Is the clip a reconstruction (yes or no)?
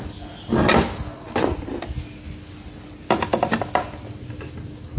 no